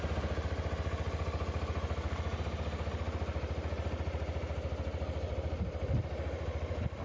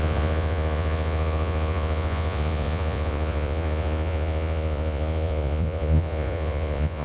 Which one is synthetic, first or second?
second